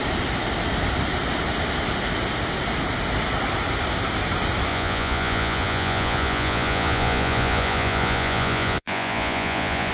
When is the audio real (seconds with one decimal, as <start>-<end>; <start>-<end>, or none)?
0.0-4.7